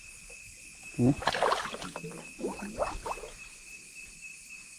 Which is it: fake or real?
real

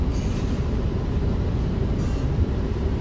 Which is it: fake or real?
fake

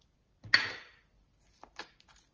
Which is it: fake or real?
real